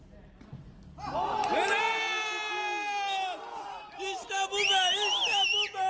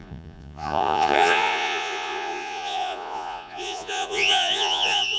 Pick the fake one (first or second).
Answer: second